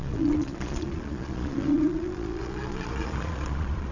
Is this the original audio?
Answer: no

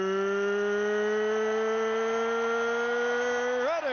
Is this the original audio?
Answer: yes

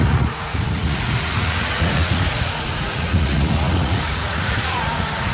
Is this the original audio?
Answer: no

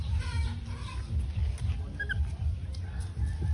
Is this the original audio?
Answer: yes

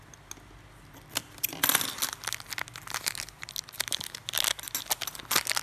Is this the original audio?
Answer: yes